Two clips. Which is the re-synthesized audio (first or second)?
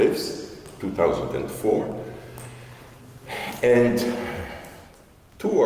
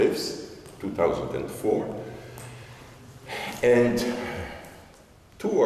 second